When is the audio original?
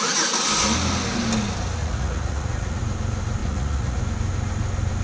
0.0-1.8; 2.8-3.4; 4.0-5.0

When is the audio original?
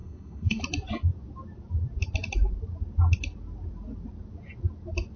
0.6-5.2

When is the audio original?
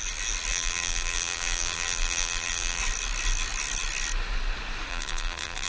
0.0-0.5; 2.8-4.9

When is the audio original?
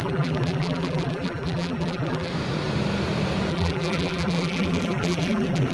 2.3-3.5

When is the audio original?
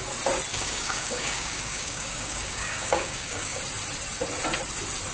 0.0-0.5; 3.6-5.1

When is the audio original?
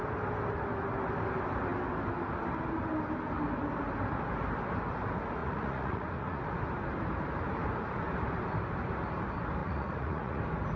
0.0-5.4; 6.4-9.6; 10.4-10.8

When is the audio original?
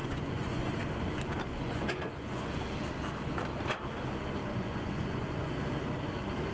0.7-1.5; 2.5-4.5; 5.5-6.5